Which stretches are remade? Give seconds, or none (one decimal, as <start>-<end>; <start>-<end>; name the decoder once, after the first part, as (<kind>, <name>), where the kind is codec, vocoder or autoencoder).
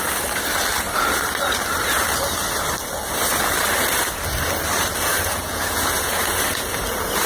5.1-6.7 (vocoder, Vocos)